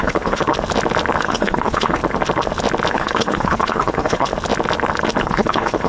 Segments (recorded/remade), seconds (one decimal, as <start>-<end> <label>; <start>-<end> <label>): 0.0-0.5 remade; 0.5-1.2 recorded; 1.2-2.0 remade; 2.0-2.9 recorded; 2.9-4.3 remade; 4.3-5.2 recorded; 5.2-5.9 remade